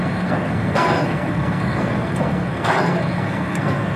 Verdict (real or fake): fake